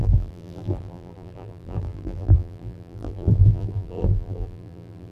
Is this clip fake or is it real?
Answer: fake